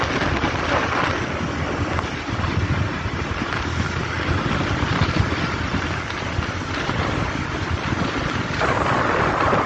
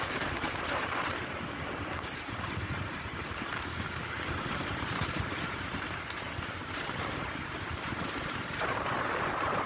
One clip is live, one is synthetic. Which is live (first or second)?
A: first